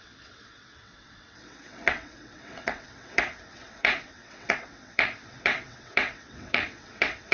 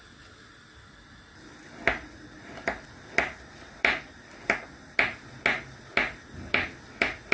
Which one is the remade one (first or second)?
first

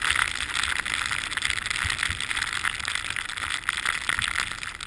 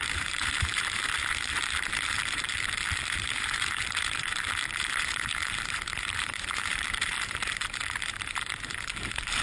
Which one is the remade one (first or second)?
second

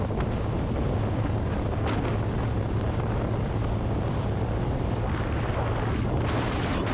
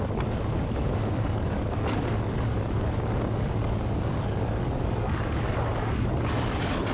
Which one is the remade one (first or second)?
second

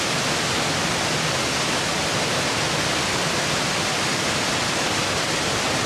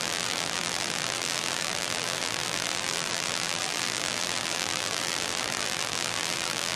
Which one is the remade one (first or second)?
second